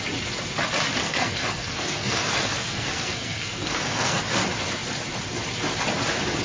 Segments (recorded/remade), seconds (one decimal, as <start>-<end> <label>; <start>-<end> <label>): 0.0-1.0 recorded; 1.0-4.2 remade; 4.2-6.4 recorded